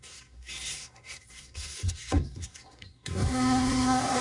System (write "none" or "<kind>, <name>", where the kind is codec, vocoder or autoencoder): codec, SNAC